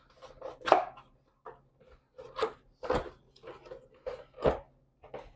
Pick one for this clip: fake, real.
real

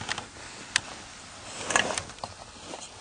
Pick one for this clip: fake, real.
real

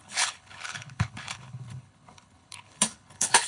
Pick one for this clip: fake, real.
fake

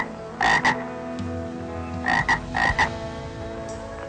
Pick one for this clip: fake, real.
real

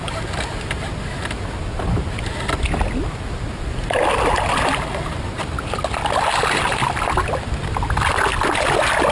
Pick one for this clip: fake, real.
real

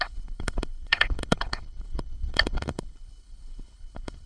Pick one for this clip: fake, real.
fake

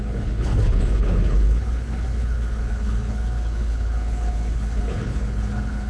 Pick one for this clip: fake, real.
fake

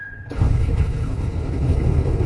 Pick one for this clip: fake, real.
fake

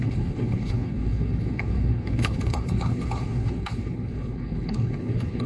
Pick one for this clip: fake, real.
fake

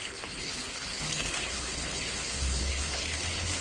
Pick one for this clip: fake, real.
fake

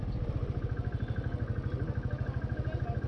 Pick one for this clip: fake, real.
real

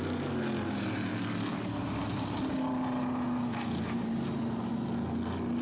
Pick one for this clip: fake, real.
real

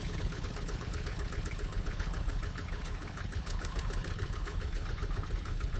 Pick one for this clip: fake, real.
fake